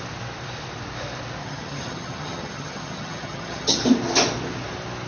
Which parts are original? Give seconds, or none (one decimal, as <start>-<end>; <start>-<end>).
0.0-1.4; 3.8-5.1